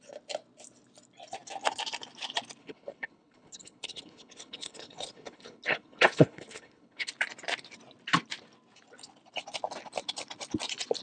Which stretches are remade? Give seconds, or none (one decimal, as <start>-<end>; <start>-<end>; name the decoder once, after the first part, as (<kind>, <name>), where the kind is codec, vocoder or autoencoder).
2.6-7.1 (codec, HILCodec)